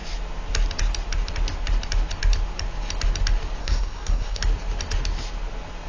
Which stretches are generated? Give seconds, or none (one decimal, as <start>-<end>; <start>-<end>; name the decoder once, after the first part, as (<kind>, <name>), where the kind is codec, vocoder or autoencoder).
3.6-4.4 (codec, SNAC)